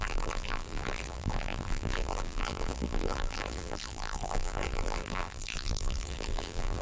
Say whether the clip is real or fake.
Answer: fake